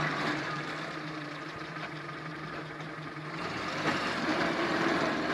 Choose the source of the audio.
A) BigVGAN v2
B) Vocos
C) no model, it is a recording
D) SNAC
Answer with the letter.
A